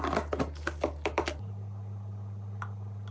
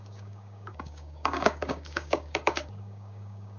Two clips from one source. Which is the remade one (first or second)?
second